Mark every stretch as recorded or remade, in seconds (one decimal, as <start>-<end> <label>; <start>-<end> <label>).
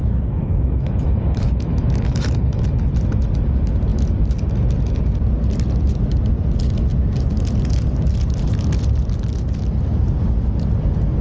0.0-2.6 remade; 2.6-11.2 recorded